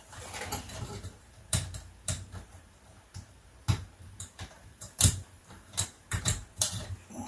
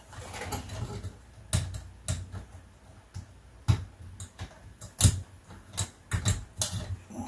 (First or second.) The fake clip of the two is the first